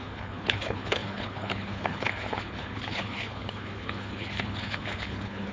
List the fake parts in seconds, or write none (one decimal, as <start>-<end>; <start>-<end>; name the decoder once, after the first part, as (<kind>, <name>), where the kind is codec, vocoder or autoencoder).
0.0-5.5 (codec, HILCodec)